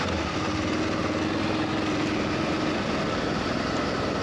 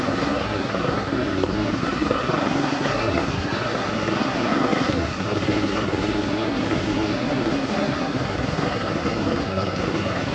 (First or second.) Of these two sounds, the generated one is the second